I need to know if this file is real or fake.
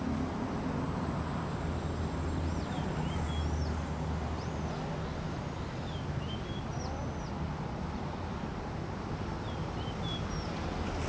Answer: real